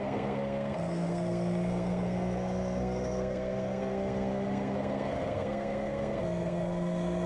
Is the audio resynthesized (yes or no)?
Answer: yes